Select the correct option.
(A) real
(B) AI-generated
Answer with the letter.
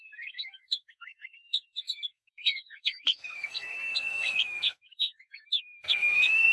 B